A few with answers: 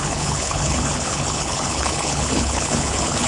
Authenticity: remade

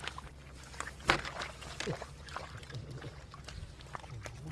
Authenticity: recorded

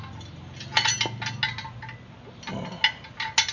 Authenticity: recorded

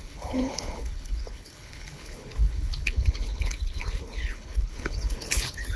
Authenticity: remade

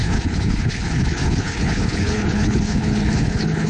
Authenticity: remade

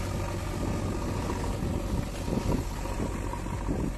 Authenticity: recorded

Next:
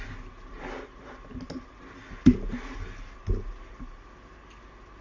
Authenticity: recorded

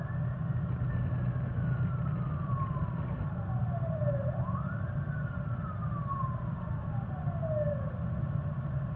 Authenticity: recorded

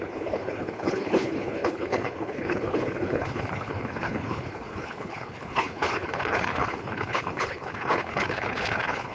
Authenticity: remade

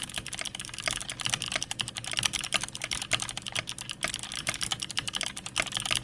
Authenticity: recorded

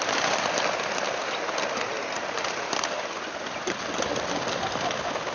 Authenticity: recorded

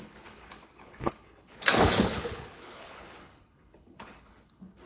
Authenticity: remade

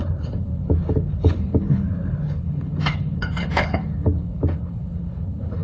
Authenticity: remade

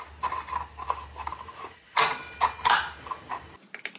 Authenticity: recorded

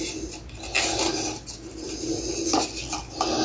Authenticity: recorded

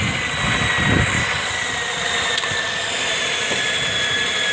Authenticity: recorded